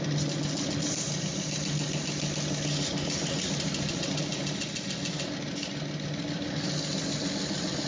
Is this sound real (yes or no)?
yes